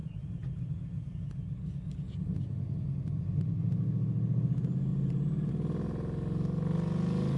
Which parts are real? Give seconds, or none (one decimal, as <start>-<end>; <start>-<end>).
0.7-4.9; 5.5-7.4